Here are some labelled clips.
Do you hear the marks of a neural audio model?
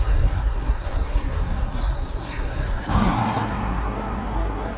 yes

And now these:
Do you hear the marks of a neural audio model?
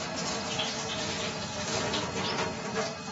no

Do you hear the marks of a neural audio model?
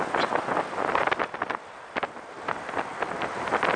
no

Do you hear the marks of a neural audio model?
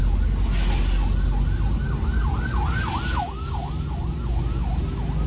no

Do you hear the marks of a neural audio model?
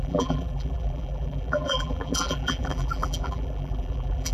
yes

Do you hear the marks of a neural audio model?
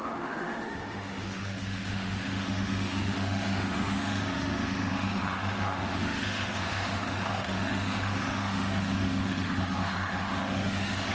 yes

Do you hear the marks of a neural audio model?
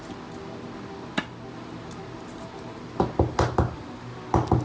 no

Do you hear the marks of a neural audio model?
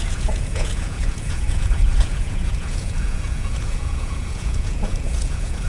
yes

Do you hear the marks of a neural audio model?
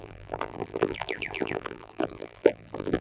yes